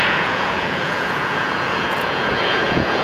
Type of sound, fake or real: fake